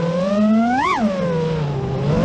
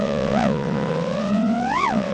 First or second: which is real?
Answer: first